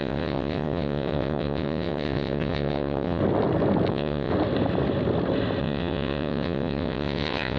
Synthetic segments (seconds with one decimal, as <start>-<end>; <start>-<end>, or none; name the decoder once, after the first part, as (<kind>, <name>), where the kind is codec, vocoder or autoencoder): 0.0-3.2 (vocoder, WaveNeXt); 3.9-4.3; 5.6-7.6